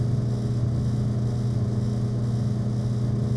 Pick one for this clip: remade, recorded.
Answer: recorded